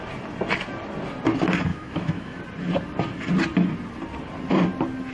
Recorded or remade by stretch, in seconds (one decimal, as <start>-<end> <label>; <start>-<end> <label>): 0.0-1.7 recorded; 1.7-2.4 remade; 2.4-5.1 recorded